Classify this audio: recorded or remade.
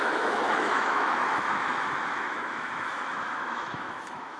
remade